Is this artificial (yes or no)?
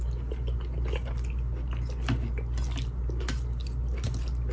no